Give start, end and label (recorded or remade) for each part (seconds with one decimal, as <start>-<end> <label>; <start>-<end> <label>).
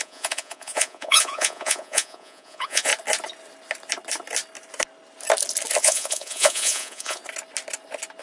0.0-2.9 remade; 2.9-5.8 recorded; 5.8-7.2 remade; 7.2-8.2 recorded